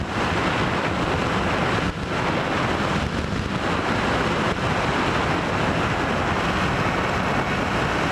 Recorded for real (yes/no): yes